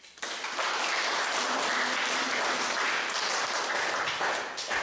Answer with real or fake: real